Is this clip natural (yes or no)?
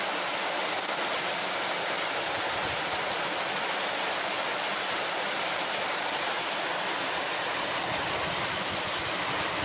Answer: yes